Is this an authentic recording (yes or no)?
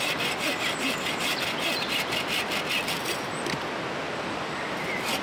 yes